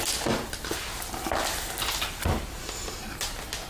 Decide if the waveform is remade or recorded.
recorded